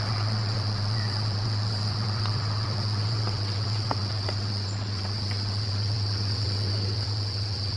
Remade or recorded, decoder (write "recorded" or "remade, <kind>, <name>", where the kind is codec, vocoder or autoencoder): remade, vocoder, WaveNeXt